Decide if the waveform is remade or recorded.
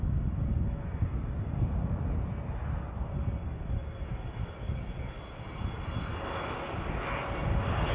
recorded